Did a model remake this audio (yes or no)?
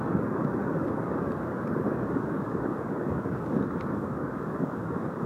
yes